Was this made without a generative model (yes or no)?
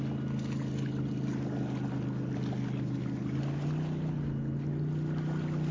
yes